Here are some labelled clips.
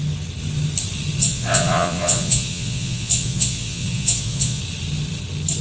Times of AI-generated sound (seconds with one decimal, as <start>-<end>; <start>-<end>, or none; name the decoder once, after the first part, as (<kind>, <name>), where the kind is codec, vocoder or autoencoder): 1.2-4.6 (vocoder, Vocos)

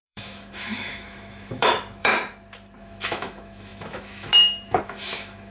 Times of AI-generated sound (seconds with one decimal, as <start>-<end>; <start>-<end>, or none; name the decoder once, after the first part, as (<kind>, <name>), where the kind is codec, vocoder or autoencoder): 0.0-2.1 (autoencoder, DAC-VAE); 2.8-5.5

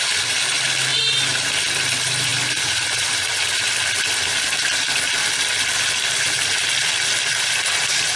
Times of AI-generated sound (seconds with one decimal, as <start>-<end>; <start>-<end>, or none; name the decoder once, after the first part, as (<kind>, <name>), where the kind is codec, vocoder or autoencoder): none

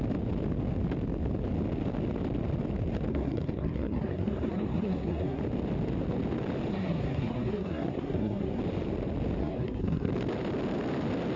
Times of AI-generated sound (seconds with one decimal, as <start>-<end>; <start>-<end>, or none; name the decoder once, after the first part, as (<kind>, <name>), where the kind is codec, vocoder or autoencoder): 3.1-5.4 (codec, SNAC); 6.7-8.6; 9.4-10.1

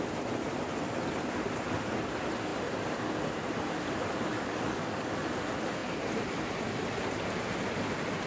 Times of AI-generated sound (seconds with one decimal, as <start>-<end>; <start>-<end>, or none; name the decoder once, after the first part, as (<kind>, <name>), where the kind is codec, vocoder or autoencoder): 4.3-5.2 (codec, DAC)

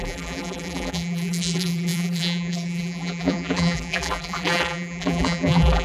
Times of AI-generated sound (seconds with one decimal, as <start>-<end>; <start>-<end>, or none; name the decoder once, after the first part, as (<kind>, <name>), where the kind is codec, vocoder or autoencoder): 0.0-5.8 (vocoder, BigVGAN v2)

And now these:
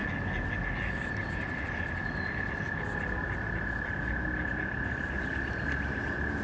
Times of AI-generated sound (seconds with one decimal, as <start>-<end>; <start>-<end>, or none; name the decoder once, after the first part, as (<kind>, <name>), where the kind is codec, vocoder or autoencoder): none